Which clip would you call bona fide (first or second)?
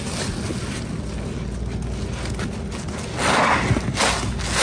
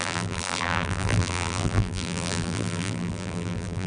first